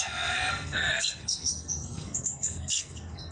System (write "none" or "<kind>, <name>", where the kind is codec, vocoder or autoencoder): codec, SNAC